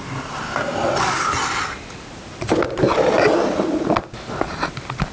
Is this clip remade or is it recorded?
recorded